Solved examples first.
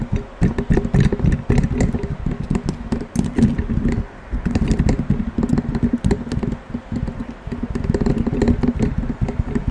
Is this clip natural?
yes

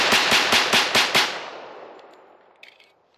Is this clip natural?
yes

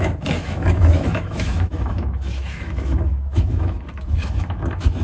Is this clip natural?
no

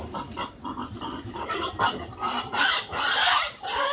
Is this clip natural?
no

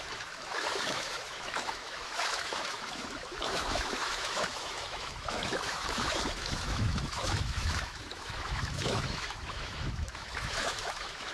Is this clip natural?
no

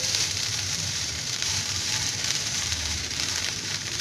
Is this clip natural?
no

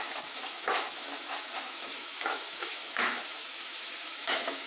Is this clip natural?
no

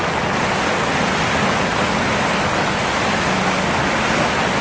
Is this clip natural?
yes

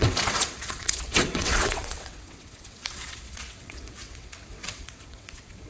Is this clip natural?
no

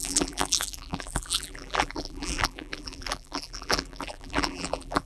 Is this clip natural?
no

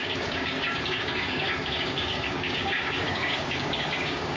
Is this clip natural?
no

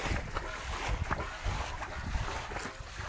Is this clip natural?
yes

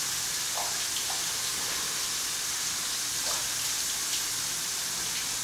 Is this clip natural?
yes